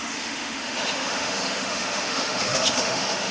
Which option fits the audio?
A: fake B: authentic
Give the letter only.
A